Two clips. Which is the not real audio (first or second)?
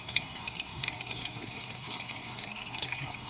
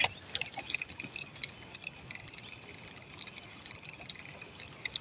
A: first